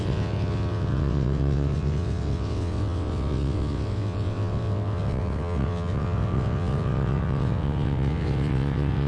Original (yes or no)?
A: no